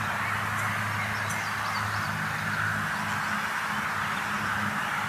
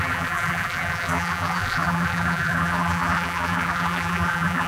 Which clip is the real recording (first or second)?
first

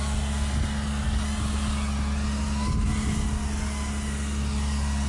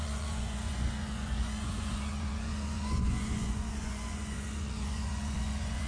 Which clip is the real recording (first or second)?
first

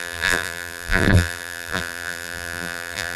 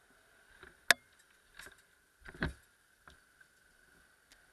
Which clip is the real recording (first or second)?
second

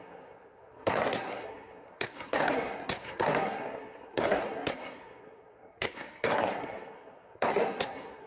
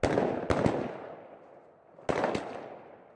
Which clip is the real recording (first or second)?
second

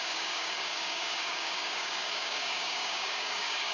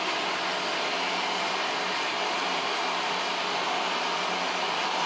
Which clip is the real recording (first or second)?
second